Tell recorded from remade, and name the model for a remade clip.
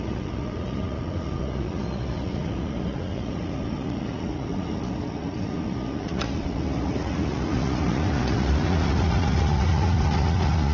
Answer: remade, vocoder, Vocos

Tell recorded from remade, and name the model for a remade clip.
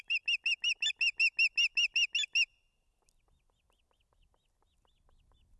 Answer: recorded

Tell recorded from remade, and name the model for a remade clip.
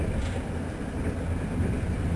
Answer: recorded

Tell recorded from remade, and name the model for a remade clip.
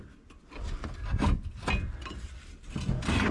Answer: recorded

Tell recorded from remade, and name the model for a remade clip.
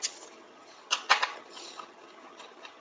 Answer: remade, vocoder, HiFi-GAN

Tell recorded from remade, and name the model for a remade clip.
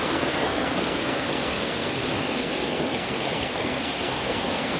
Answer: remade, codec, SNAC